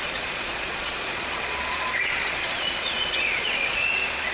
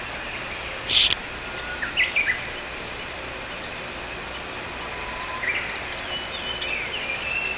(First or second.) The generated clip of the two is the first